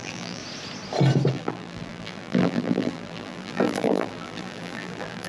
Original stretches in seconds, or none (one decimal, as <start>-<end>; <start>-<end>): 0.4-1.3